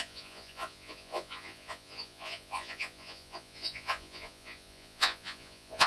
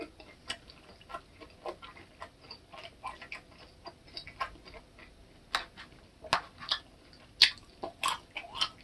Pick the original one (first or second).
second